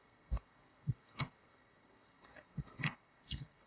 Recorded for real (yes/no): no